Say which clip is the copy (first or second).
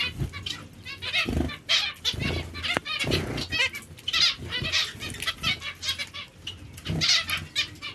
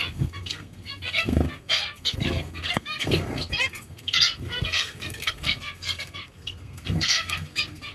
second